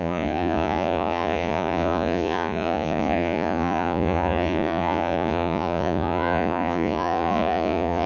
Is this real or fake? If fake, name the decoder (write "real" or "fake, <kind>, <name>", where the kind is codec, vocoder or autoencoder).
fake, vocoder, Vocos